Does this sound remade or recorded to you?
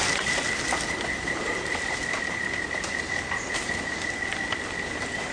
recorded